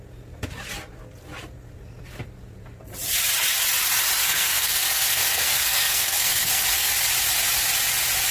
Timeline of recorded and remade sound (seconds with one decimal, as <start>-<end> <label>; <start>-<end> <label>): 0.0-4.2 recorded; 4.2-6.9 remade; 6.9-8.3 recorded